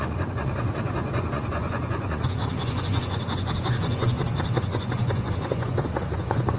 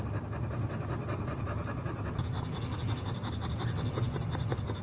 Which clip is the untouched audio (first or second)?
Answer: second